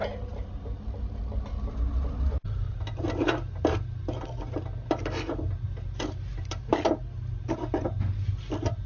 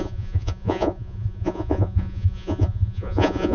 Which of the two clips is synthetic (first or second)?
second